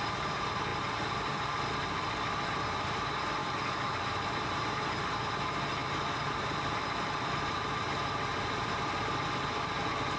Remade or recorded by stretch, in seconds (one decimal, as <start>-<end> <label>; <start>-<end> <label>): 0.0-3.4 recorded; 3.4-4.0 remade; 4.0-10.2 recorded